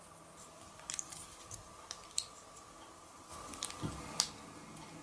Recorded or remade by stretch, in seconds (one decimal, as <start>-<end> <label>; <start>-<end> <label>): 0.0-5.0 recorded